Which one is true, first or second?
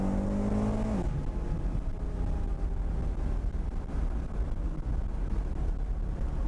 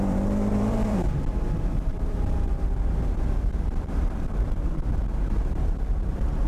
first